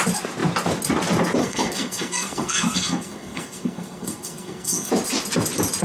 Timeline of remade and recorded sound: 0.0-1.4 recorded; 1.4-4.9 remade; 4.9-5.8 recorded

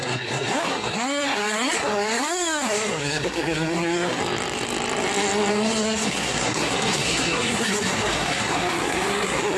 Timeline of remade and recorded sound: 0.0-4.2 remade; 4.2-5.5 recorded; 5.5-9.6 remade

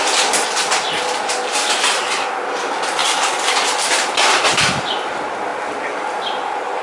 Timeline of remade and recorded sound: 0.0-6.8 recorded

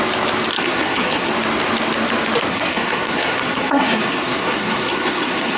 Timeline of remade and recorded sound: 0.0-0.5 recorded; 0.5-1.3 remade; 1.3-2.5 recorded; 2.5-5.6 remade

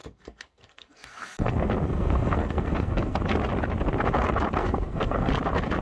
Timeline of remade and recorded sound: 0.0-3.2 remade; 3.2-4.6 recorded; 4.6-5.3 remade; 5.3-5.8 recorded

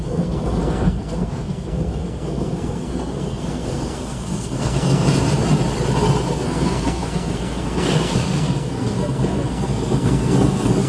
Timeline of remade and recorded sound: 0.0-5.1 remade; 5.1-6.3 recorded; 6.3-10.9 remade